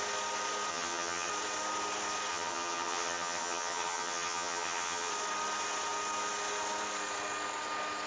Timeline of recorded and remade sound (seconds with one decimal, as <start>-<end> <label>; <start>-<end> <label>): 0.0-0.7 recorded; 0.7-1.3 remade; 1.3-2.3 recorded; 2.3-5.1 remade; 5.1-8.1 recorded